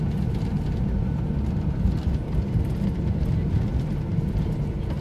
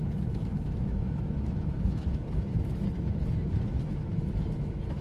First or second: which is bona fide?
first